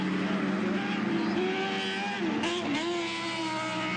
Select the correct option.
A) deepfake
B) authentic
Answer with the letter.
B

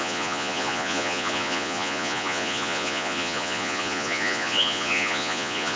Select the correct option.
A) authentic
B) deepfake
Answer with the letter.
B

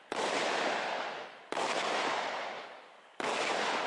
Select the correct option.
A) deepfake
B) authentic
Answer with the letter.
B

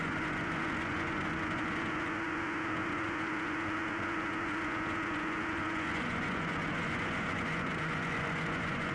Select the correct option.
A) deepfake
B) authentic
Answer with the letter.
A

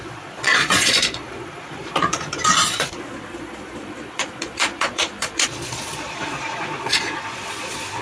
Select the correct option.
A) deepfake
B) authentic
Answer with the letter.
A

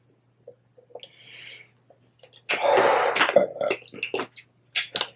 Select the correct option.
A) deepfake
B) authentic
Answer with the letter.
B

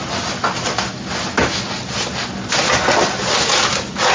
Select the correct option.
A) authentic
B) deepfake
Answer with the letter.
A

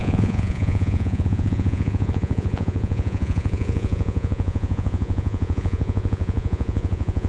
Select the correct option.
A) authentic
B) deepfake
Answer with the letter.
B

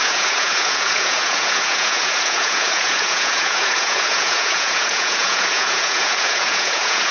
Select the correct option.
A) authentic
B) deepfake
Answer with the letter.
B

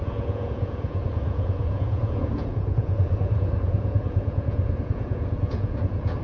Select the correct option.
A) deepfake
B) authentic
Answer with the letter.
A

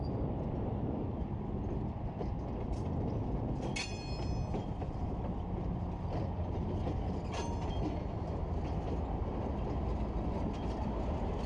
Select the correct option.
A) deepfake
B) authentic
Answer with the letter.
B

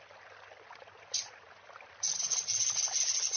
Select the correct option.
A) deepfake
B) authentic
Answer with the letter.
B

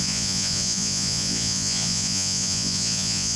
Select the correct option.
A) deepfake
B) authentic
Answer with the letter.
A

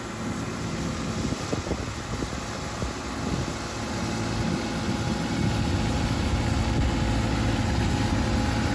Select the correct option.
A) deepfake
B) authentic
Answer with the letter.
B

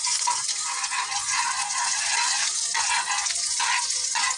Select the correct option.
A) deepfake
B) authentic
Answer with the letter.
A